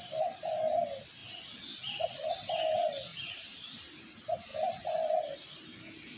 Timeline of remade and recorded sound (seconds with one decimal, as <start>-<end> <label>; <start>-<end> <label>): 0.0-3.1 recorded; 3.1-3.8 remade; 3.8-6.2 recorded